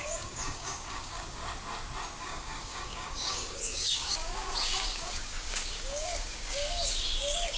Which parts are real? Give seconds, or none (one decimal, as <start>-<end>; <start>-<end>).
1.4-2.2